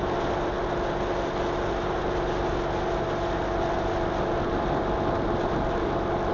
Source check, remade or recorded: recorded